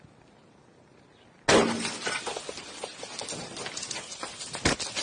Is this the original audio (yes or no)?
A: yes